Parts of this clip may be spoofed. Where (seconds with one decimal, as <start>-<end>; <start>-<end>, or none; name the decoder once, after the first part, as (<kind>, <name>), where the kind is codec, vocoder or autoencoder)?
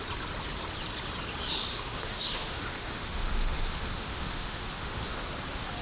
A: 1.7-5.2 (autoencoder, DAC-VAE)